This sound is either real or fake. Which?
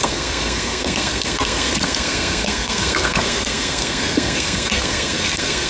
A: fake